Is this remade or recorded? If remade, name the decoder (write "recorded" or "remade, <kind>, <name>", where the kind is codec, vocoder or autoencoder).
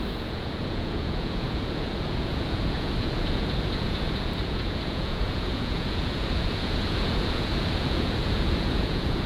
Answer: remade, vocoder, Vocos